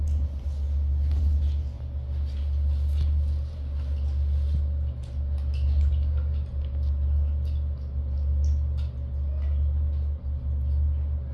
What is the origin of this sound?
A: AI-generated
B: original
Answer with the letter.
B